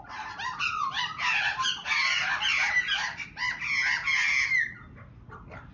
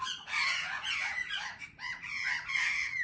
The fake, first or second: second